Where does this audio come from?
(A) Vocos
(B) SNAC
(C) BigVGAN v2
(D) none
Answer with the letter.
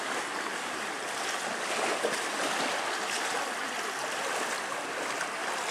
D